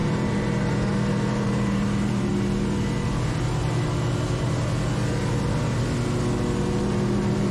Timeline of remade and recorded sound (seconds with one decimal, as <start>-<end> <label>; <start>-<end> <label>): 0.0-2.3 remade; 2.3-6.8 recorded; 6.8-7.5 remade